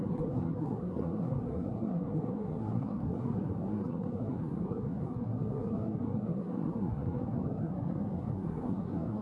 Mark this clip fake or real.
fake